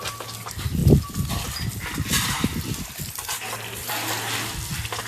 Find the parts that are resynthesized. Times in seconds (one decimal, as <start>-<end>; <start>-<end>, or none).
none